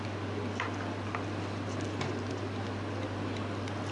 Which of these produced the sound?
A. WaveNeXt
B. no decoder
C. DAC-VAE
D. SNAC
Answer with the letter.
B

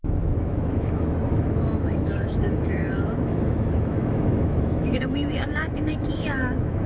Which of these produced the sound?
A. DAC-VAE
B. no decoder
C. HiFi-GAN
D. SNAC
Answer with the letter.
A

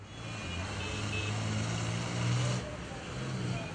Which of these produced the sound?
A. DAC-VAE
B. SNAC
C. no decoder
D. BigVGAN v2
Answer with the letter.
C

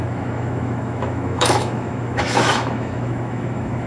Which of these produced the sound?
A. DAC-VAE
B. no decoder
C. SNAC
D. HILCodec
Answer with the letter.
A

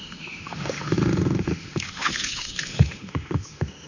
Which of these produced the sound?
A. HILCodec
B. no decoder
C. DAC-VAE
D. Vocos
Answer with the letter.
C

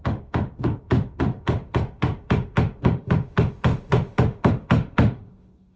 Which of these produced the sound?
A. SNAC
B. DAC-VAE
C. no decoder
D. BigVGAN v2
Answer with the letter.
B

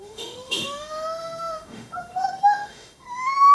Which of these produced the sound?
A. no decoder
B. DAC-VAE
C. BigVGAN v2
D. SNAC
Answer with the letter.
B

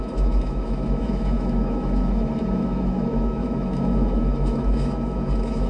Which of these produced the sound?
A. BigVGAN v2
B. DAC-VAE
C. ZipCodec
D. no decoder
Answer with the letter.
B